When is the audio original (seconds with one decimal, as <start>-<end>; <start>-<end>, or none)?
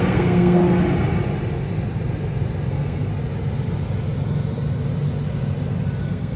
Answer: 0.6-2.7; 3.1-6.0